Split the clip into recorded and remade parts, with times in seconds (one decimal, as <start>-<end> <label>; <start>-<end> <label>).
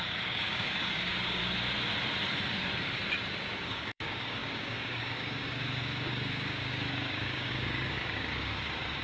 0.0-1.4 remade; 1.4-3.6 recorded; 3.6-9.0 remade